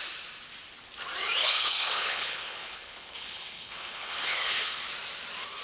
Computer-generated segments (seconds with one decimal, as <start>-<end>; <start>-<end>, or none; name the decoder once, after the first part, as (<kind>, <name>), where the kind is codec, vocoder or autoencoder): 1.4-4.8 (codec, HILCodec)